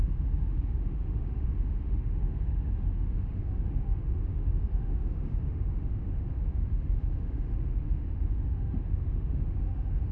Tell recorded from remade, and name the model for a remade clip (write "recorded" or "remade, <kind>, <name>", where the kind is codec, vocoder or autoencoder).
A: remade, autoencoder, DAC-VAE